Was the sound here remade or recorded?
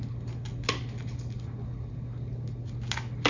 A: recorded